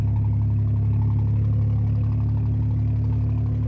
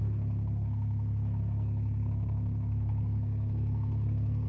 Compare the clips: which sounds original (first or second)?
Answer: first